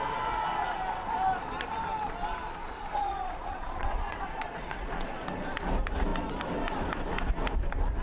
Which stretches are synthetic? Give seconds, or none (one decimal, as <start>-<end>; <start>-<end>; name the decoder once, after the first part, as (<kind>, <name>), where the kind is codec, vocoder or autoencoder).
2.6-5.1 (vocoder, Vocos)